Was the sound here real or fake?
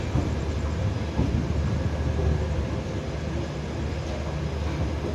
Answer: real